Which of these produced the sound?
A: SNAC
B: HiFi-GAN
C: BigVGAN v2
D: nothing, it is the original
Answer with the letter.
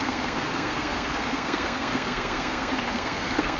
A